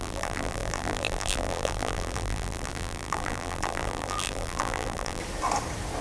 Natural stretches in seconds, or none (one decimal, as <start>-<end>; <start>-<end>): 5.2-6.0